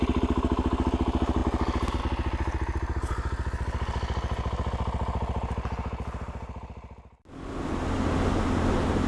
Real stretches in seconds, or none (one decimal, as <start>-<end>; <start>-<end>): 0.0-9.1

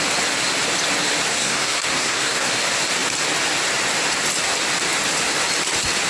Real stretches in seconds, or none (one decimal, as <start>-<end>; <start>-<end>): 0.0-1.3; 2.5-6.1

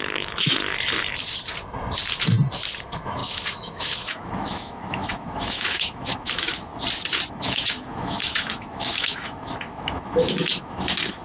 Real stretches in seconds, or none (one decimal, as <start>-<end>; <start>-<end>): 0.6-2.8; 6.7-7.4

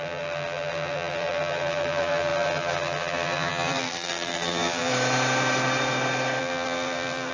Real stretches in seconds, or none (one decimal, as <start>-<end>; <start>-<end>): 4.9-6.4

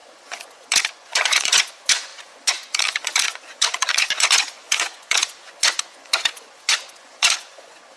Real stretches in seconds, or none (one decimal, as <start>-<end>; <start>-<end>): none